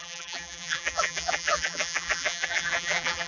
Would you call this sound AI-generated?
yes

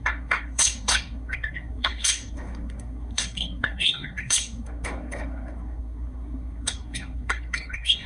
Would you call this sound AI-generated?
yes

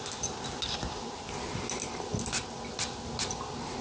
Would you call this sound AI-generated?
no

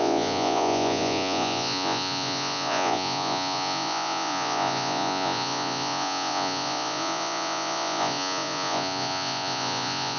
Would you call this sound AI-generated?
yes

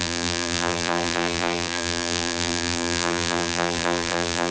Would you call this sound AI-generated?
yes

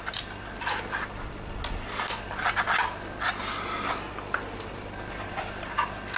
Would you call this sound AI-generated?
no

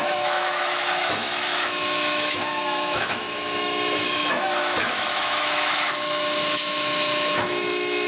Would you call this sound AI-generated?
yes